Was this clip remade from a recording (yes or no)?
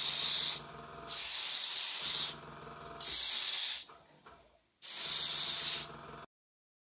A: no